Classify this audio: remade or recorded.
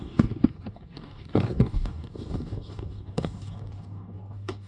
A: remade